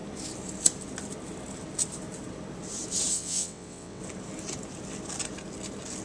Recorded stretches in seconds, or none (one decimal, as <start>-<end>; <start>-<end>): 0.0-3.1; 4.0-6.0